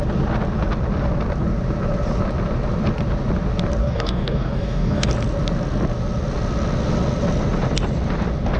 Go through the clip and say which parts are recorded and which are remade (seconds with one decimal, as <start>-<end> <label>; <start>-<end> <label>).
0.0-3.8 recorded; 3.8-5.1 remade; 5.1-8.6 recorded